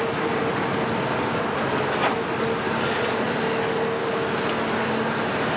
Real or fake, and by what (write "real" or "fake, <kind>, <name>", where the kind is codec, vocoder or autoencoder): real